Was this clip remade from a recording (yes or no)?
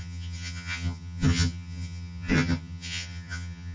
yes